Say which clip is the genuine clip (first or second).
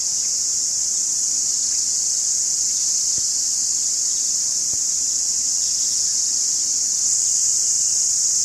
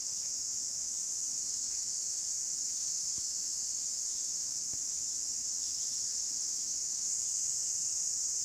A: first